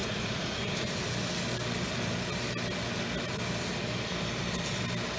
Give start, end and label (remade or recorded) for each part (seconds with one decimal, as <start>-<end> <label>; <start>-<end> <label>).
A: 0.0-0.9 remade; 0.9-5.2 recorded